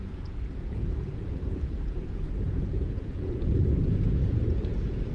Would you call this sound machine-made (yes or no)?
yes